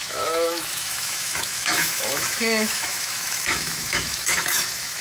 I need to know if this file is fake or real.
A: fake